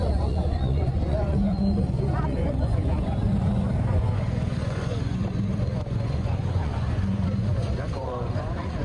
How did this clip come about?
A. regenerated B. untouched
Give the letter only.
A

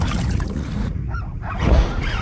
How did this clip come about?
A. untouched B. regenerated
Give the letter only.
B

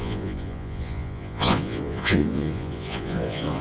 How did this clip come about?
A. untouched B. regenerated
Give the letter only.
B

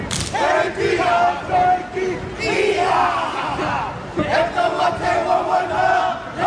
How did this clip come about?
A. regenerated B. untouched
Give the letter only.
B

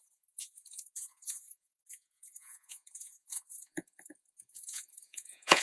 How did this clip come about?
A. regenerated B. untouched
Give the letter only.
A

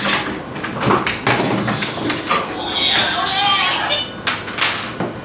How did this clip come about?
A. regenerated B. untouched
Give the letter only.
B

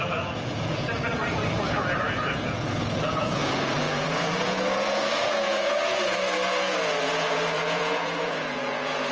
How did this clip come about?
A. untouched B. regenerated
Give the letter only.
B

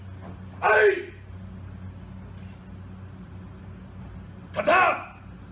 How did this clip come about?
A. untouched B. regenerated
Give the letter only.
A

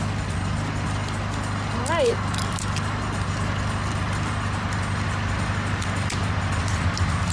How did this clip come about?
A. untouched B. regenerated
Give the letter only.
A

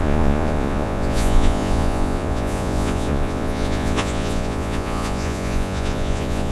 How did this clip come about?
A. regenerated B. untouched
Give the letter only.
A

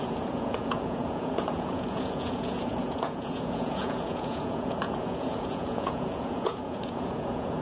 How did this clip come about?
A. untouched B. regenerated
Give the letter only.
B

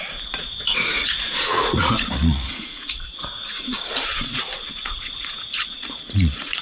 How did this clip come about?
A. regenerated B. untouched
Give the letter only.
A